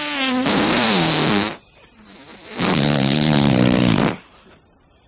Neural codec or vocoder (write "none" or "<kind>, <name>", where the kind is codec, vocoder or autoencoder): vocoder, BigVGAN v2